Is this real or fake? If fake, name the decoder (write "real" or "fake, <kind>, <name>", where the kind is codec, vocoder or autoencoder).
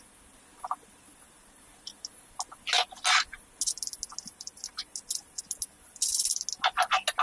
real